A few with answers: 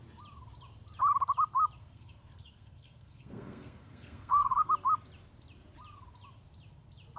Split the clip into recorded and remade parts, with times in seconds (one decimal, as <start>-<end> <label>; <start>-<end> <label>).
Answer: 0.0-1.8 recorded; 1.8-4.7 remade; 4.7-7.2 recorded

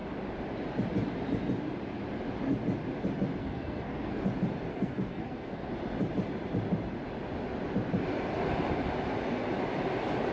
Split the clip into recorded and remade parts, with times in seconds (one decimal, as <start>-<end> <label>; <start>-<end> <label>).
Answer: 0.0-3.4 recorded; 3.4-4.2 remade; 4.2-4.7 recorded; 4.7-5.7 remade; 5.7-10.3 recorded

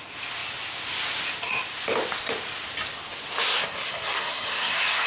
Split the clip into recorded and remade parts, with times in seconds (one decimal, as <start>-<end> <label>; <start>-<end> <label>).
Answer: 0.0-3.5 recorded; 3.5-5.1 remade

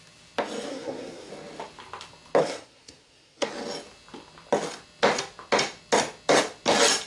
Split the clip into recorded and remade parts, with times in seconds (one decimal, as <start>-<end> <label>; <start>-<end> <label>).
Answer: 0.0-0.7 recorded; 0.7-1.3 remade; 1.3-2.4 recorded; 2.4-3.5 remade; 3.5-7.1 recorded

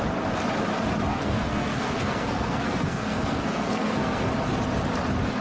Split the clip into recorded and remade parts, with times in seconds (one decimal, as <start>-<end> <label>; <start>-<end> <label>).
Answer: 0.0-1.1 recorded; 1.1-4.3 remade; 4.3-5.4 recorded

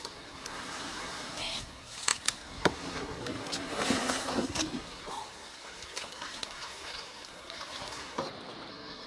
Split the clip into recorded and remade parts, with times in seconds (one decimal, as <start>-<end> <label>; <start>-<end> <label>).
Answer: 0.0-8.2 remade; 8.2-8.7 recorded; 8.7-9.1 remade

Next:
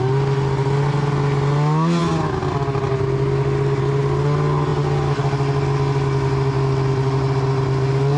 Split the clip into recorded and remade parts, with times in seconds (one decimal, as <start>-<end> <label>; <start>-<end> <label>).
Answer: 0.0-8.2 recorded

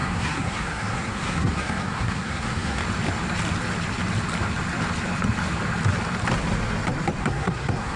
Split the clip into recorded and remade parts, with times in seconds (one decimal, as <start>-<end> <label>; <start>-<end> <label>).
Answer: 0.0-2.8 remade; 2.8-7.2 recorded; 7.2-8.0 remade